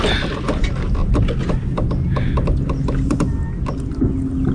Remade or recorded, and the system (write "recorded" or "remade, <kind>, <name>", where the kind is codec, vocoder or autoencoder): recorded